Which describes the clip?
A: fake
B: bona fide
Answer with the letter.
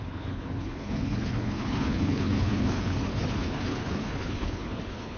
A